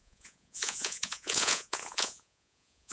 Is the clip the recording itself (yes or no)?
no